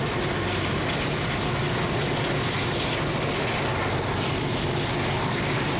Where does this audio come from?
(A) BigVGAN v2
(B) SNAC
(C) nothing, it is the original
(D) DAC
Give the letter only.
C